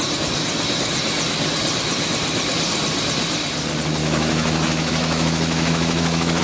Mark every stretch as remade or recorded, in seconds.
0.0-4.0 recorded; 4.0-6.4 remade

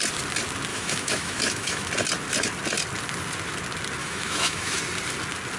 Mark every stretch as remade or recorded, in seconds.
0.0-0.7 recorded; 0.7-1.9 remade; 1.9-4.0 recorded; 4.0-4.8 remade; 4.8-5.6 recorded

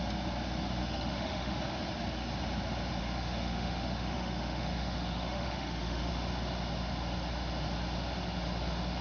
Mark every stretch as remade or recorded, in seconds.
0.0-0.8 recorded; 0.8-1.6 remade; 1.6-3.0 recorded; 3.0-6.1 remade; 6.1-9.0 recorded